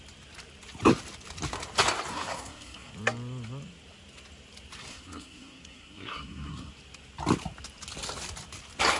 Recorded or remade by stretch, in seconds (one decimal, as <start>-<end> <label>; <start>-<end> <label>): 0.0-2.1 recorded; 2.1-2.9 remade; 2.9-4.9 recorded; 4.9-6.7 remade; 6.7-9.0 recorded